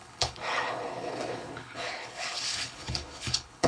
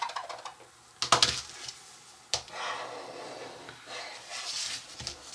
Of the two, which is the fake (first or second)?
first